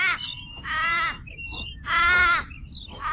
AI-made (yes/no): no